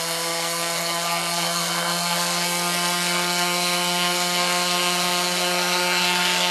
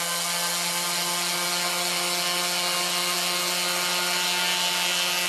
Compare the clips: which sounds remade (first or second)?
first